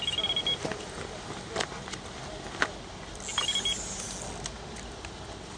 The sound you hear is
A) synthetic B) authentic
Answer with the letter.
B